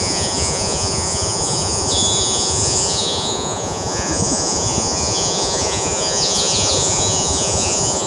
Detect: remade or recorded remade